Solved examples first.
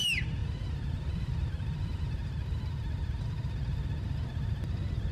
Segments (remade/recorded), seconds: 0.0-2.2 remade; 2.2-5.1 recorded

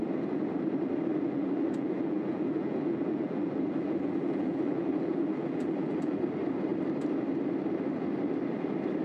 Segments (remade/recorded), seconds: 0.0-1.1 recorded; 1.1-6.2 remade; 6.2-9.0 recorded

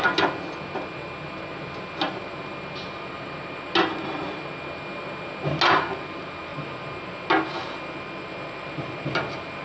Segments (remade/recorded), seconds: 0.0-9.6 recorded

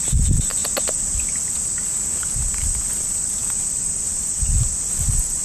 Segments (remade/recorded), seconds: 0.0-0.6 remade; 0.6-2.5 recorded; 2.5-5.4 remade

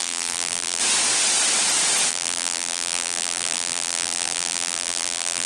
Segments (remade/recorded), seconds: 0.0-0.8 remade; 0.8-2.1 recorded; 2.1-5.5 remade

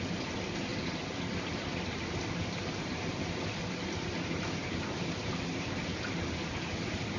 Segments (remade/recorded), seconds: 0.0-0.7 recorded; 0.7-3.8 remade; 3.8-4.6 recorded; 4.6-5.9 remade; 5.9-7.2 recorded

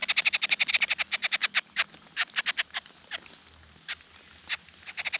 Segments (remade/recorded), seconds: 0.0-5.2 recorded